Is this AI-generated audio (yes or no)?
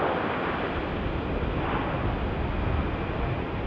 no